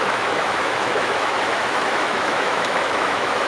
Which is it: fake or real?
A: fake